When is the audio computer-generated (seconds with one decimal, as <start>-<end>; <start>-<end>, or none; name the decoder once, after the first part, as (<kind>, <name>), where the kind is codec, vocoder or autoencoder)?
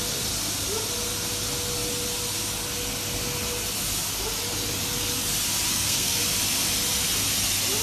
5.7-6.2 (codec, SNAC)